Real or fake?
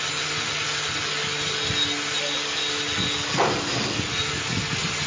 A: real